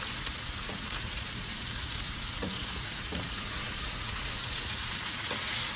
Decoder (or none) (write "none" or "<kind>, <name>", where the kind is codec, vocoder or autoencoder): vocoder, Vocos